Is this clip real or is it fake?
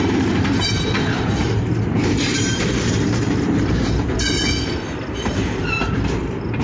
fake